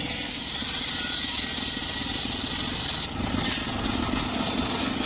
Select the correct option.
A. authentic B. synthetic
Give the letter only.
A